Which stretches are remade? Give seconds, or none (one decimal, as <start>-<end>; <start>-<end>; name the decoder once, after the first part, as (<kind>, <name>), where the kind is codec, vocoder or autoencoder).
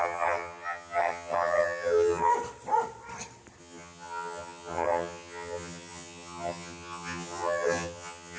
0.0-2.3 (vocoder, HiFi-GAN); 3.6-8.4